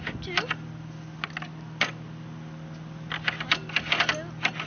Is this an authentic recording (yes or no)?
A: yes